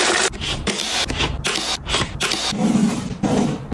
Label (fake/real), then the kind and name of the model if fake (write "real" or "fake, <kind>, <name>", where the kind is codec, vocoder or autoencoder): fake, vocoder, BigVGAN v2